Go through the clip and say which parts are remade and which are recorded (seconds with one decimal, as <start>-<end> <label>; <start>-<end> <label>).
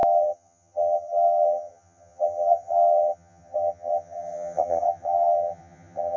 0.0-6.2 remade